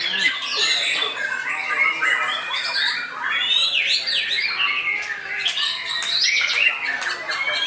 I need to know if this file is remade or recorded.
recorded